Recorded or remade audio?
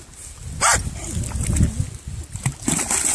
recorded